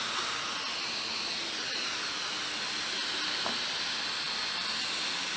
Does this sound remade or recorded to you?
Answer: recorded